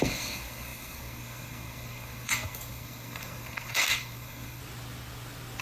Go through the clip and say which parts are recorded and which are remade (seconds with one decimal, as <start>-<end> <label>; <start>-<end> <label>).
0.0-4.6 remade; 4.6-5.6 recorded